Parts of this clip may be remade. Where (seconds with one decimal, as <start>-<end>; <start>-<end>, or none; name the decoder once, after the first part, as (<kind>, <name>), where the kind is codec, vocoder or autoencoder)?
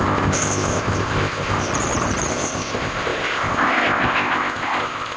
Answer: 0.0-1.7 (codec, ZipCodec); 2.3-5.2